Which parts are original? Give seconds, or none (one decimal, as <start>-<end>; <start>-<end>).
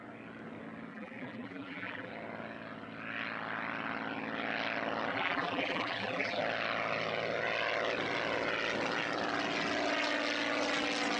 0.0-0.9; 2.1-5.1; 6.4-11.2